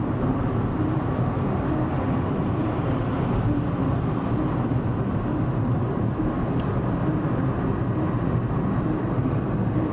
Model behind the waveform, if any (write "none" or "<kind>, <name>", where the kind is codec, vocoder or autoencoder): vocoder, BigVGAN v2